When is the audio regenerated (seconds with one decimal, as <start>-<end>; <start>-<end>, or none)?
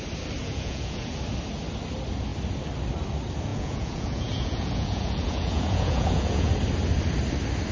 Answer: 0.4-1.1; 3.5-6.5